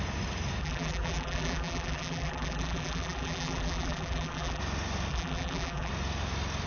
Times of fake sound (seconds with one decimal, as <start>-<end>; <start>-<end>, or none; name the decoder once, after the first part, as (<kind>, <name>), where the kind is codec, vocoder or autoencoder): 0.6-4.6 (vocoder, BigVGAN v2); 5.1-5.9